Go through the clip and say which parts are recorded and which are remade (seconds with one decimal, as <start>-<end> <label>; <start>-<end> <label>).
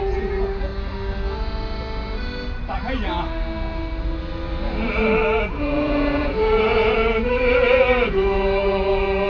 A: 0.0-0.7 remade; 0.7-5.4 recorded; 5.4-9.3 remade